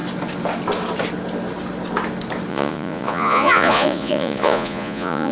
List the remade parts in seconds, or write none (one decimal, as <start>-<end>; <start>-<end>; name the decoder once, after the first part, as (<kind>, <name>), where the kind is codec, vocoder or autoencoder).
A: 2.5-5.3 (vocoder, Vocos)